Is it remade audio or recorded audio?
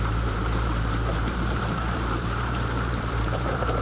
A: remade